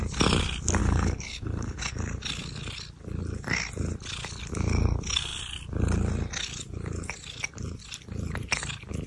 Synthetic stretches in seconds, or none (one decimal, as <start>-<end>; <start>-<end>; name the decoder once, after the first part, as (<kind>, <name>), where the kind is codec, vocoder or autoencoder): 0.8-1.9 (codec, HILCodec)